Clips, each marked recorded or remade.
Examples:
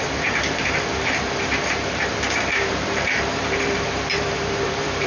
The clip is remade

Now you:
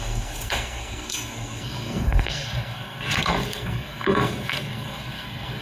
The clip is remade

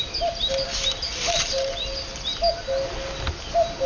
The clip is recorded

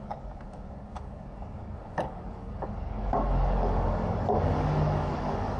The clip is remade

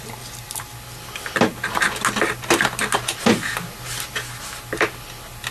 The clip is recorded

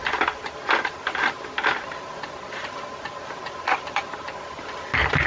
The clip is recorded